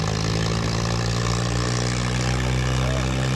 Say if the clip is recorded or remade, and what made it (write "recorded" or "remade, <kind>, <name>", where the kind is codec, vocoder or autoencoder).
recorded